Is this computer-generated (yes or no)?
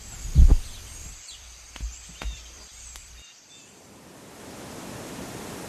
yes